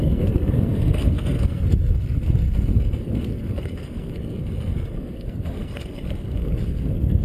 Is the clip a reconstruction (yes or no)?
yes